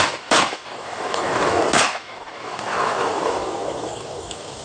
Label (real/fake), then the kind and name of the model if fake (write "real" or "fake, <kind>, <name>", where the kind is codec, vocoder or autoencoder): fake, codec, DAC